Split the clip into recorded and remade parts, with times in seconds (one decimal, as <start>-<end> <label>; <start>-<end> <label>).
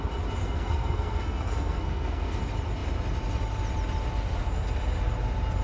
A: 0.0-0.4 recorded; 0.4-2.4 remade; 2.4-5.6 recorded